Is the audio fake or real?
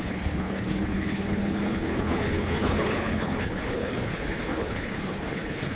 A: fake